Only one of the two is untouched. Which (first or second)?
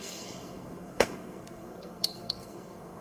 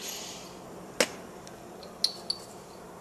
second